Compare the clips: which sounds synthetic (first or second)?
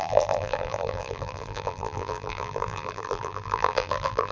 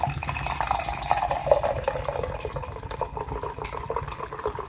first